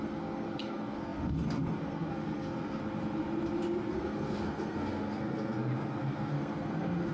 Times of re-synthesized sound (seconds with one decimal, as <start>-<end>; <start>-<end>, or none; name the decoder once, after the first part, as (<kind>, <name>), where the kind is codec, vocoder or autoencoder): 0.0-2.8 (codec, SNAC); 3.9-7.1